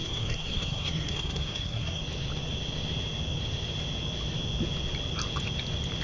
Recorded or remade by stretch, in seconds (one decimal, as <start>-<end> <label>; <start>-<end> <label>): 0.0-2.0 remade; 2.0-6.0 recorded